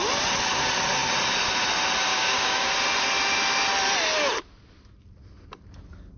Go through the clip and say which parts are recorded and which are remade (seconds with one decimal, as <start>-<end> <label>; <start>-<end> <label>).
0.0-2.1 recorded; 2.1-2.7 remade; 2.7-6.2 recorded